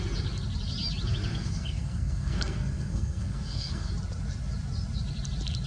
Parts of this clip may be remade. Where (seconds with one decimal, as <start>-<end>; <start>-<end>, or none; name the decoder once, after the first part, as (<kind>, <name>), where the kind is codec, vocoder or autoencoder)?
1.3-3.9 (codec, SNAC)